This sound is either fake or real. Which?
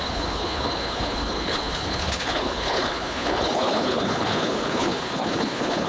fake